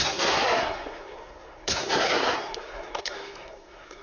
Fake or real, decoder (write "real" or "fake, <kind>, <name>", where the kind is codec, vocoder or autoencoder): fake, codec, SNAC